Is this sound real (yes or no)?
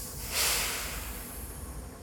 no